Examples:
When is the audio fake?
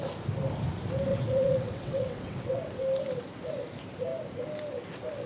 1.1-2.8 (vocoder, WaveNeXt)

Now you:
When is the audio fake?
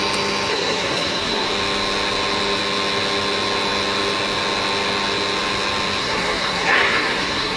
0.5-1.5 (codec, SNAC); 6.0-7.6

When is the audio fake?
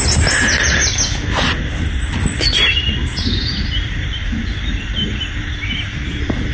0.0-0.8 (vocoder, BigVGAN v2); 2.4-6.5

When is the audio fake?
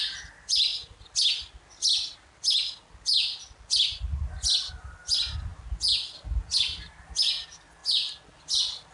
none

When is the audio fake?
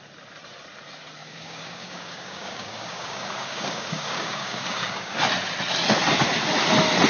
1.2-5.2 (codec, DAC)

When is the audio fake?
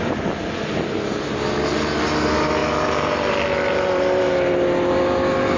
2.6-4.3 (vocoder, BigVGAN v2)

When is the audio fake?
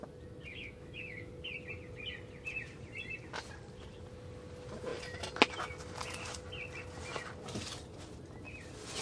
0.5-1.3 (autoencoder, DAC-VAE)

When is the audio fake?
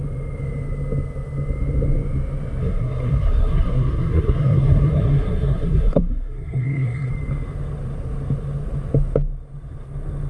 2.6-7.1 (codec, SNAC)